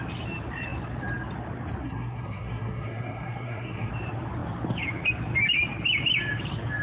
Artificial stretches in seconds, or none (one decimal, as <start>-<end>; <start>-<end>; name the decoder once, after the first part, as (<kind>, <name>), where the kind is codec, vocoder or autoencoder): 1.8-3.9 (codec, SNAC)